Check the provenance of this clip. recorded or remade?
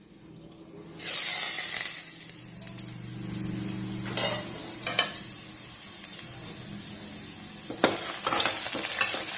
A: recorded